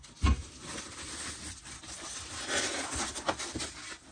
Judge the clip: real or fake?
real